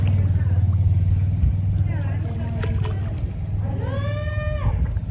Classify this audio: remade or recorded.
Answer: recorded